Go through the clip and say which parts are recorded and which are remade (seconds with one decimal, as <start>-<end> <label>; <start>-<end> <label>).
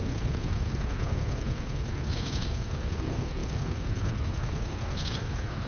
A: 0.0-5.7 remade